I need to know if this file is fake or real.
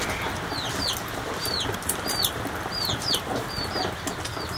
real